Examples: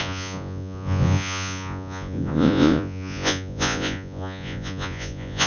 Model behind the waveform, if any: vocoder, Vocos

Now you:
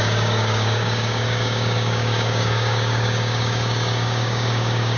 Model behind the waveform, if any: codec, DAC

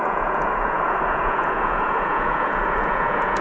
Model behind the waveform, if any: vocoder, Vocos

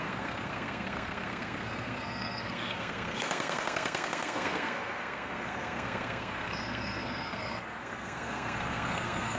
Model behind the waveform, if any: codec, SNAC